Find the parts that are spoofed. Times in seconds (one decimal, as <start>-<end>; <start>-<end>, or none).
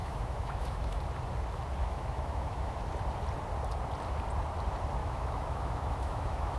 0.0-1.0; 1.8-2.7; 5.0-6.6